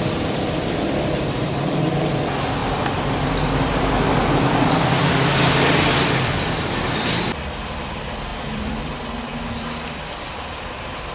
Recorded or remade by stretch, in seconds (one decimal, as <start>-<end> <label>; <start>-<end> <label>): 0.0-5.3 remade; 5.3-5.9 recorded; 5.9-11.1 remade